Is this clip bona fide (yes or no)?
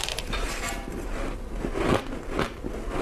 yes